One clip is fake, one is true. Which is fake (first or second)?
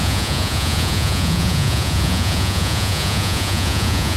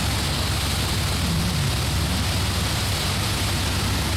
first